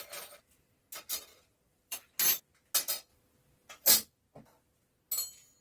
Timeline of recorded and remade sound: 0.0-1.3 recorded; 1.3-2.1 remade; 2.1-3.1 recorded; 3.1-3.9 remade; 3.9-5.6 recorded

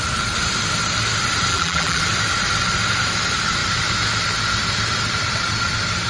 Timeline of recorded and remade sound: 0.0-1.5 recorded; 1.5-2.0 remade; 2.0-6.1 recorded

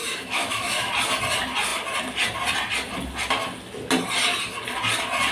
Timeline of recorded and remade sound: 0.0-0.9 remade; 0.9-5.3 recorded

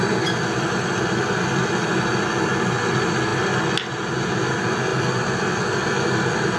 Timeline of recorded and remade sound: 0.0-6.6 recorded

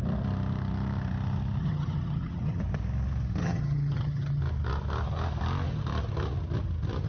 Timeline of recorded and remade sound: 0.0-1.6 recorded; 1.6-2.6 remade; 2.6-3.4 recorded; 3.4-4.4 remade; 4.4-7.1 recorded

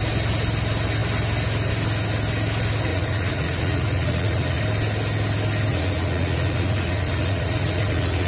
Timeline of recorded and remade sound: 0.0-2.9 recorded; 2.9-4.6 remade; 4.6-5.7 recorded; 5.7-8.3 remade